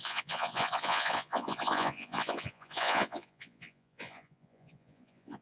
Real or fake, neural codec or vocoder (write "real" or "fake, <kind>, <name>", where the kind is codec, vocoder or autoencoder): fake, vocoder, Vocos